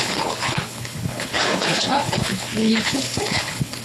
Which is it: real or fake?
fake